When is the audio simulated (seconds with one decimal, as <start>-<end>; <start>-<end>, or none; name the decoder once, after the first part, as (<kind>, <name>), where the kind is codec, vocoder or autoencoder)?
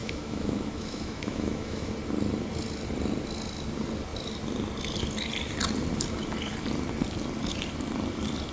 0.0-1.9 (autoencoder, DAC-VAE)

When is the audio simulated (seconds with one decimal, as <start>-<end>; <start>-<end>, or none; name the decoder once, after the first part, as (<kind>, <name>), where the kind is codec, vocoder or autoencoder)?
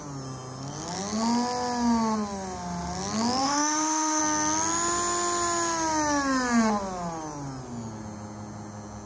3.4-4.2 (autoencoder, DAC-VAE)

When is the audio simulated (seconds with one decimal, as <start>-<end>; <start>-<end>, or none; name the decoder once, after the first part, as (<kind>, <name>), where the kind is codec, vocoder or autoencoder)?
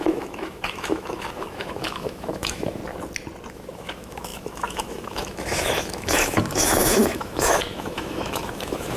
0.0-2.8 (autoencoder, DAC-VAE); 3.5-9.0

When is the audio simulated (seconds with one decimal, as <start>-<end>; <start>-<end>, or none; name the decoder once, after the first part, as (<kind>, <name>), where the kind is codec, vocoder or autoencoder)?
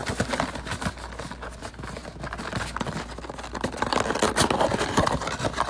none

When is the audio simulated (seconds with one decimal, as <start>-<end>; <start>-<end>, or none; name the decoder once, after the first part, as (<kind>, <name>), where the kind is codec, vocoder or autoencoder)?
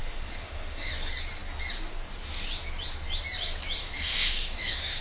0.0-0.9 (autoencoder, DAC-VAE); 3.8-5.0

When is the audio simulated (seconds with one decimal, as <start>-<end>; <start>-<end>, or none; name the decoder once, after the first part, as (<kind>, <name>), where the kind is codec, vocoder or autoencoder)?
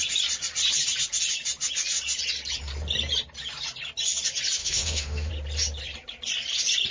4.6-5.3 (autoencoder, DAC-VAE)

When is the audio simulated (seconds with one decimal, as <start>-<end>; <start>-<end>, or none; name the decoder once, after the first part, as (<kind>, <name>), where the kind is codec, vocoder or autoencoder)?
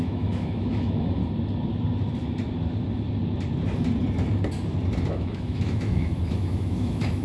0.0-1.2 (autoencoder, DAC-VAE); 5.1-7.2